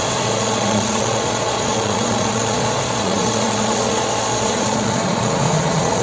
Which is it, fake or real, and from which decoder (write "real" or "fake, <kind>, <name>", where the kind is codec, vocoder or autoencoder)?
fake, vocoder, Vocos